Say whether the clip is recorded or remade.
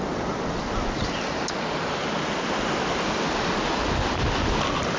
recorded